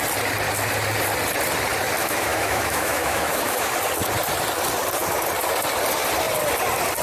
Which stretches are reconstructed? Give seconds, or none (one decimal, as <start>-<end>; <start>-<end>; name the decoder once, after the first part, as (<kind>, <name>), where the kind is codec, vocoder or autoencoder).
2.0-3.7 (autoencoder, DAC-VAE)